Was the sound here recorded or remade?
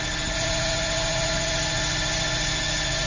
recorded